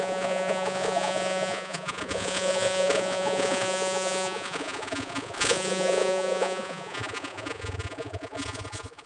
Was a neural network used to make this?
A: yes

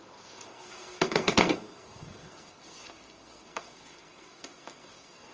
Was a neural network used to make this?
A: yes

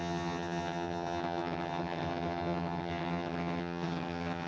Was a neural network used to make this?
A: yes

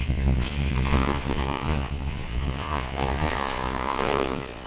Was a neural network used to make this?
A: yes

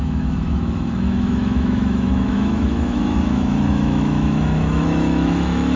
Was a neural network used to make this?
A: yes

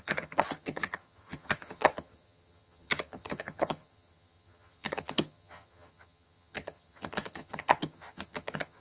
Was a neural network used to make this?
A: yes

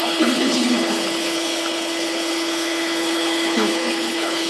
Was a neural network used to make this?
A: yes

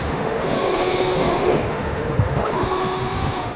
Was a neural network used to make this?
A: yes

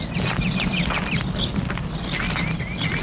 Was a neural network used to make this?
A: no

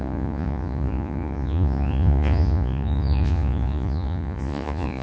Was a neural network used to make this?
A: yes